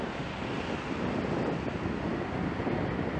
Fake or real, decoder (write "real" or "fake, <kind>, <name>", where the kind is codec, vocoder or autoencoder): real